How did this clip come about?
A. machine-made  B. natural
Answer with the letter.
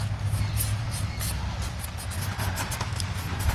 B